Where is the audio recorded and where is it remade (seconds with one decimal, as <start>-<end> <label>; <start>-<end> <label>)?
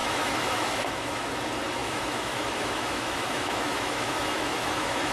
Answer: 0.0-1.3 remade; 1.3-1.8 recorded; 1.8-5.1 remade